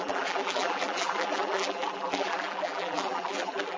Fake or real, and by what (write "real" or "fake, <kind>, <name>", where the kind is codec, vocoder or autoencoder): fake, vocoder, BigVGAN v2